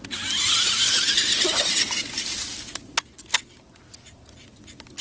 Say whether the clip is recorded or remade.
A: recorded